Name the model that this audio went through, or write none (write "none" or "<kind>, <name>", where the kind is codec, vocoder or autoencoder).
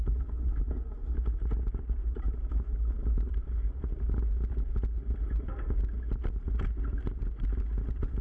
none